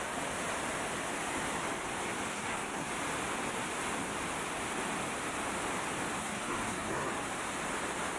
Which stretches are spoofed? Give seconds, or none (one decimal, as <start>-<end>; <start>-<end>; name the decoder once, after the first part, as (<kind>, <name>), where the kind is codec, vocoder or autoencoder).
2.3-2.9 (codec, SNAC); 6.2-7.1